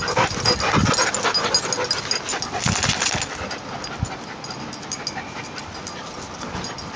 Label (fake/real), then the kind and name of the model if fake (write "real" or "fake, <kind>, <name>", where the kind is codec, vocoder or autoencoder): real